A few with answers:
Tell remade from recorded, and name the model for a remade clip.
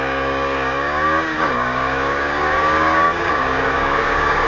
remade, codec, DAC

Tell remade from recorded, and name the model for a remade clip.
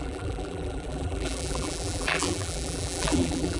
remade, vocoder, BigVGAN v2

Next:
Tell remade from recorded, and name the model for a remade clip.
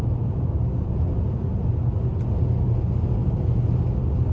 recorded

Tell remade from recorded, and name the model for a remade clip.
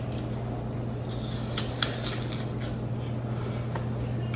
recorded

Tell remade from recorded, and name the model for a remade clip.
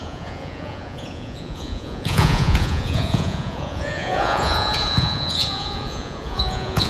remade, vocoder, Vocos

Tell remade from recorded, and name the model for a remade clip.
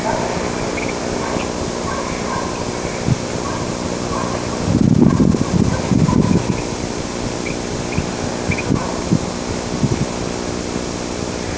recorded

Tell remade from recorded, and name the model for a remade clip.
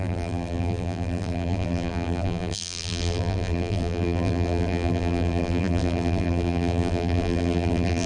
remade, vocoder, BigVGAN v2